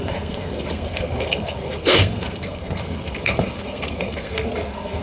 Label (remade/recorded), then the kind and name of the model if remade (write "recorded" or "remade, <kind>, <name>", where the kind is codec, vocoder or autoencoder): remade, codec, SNAC